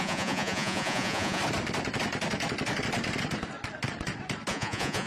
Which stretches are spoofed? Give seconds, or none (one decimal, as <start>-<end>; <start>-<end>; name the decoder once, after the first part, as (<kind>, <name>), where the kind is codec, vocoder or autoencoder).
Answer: 0.0-1.4 (vocoder, Vocos); 4.5-5.1